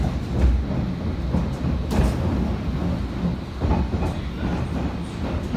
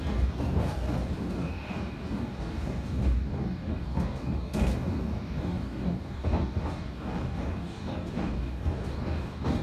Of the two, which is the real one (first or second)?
first